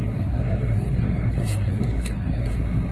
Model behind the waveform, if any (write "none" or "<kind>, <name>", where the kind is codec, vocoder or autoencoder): codec, SNAC